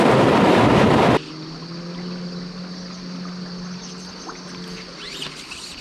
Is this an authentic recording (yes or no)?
yes